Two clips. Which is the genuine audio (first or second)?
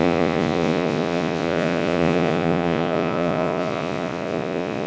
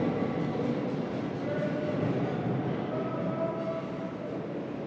second